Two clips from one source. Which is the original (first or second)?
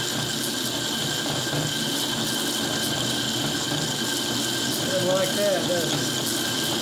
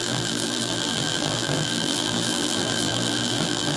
first